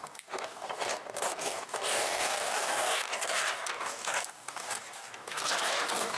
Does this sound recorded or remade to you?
remade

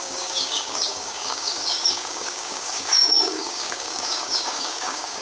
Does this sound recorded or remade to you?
remade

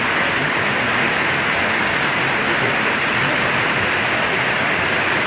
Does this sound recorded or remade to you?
recorded